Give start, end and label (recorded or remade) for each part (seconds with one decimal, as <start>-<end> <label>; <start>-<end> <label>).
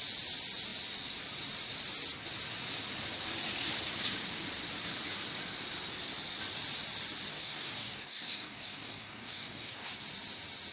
0.0-7.3 recorded; 7.3-9.9 remade; 9.9-10.7 recorded